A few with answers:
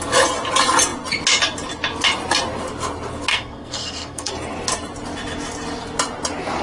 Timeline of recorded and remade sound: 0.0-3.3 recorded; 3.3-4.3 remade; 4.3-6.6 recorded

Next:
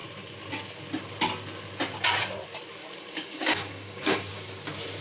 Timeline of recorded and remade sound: 0.0-2.8 recorded; 2.8-4.3 remade; 4.3-5.0 recorded

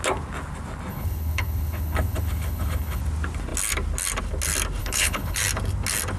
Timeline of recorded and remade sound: 0.0-0.9 recorded; 0.9-3.0 remade; 3.0-4.8 recorded; 4.8-5.4 remade; 5.4-6.2 recorded

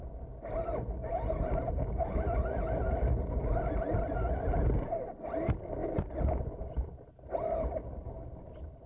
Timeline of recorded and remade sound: 0.0-8.9 recorded

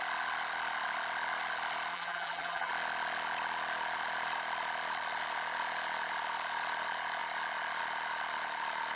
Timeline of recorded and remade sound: 0.0-1.9 recorded; 1.9-2.7 remade; 2.7-9.0 recorded

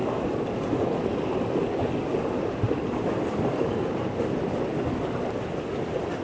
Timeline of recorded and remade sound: 0.0-6.2 recorded

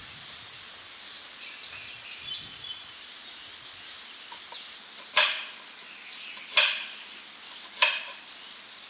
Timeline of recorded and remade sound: 0.0-8.9 recorded